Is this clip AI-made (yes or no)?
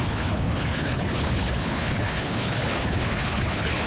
yes